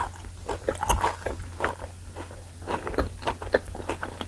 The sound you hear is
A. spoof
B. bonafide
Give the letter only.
B